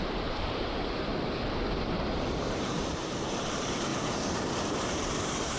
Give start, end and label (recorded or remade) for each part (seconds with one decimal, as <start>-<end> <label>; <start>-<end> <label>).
0.0-1.1 remade; 1.1-2.3 recorded; 2.3-3.9 remade; 3.9-4.7 recorded; 4.7-5.6 remade